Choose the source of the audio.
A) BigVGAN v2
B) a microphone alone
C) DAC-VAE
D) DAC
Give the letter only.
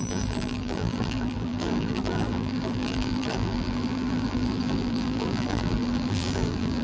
A